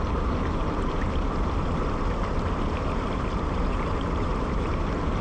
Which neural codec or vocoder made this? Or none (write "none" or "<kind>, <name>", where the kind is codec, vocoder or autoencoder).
vocoder, BigVGAN v2